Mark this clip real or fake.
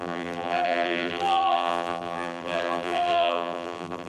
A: fake